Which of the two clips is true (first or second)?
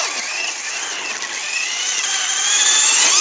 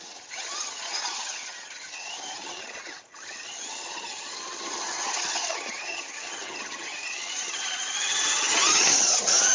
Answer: first